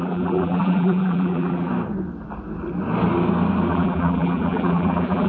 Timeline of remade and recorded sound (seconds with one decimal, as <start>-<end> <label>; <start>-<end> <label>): 0.0-1.7 remade; 1.7-3.7 recorded; 3.7-5.3 remade